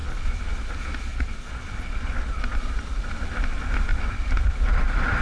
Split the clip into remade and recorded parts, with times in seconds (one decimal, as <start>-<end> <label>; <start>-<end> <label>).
0.0-0.5 remade; 0.5-1.1 recorded; 1.1-2.6 remade; 2.6-3.9 recorded; 3.9-5.2 remade